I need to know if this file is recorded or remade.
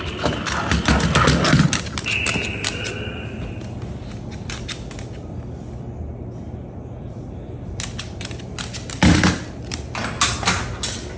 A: recorded